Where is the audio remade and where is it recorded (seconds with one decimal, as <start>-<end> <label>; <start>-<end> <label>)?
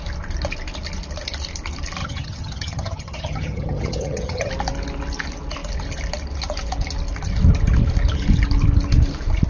0.0-2.0 recorded; 2.0-4.5 remade; 4.5-9.5 recorded